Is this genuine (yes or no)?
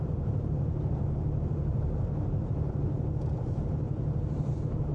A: no